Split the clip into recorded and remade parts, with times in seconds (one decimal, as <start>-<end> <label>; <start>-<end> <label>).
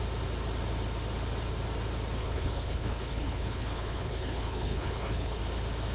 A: 0.0-2.2 recorded; 2.2-5.4 remade; 5.4-5.9 recorded